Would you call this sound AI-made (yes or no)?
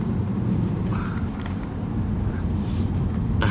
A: yes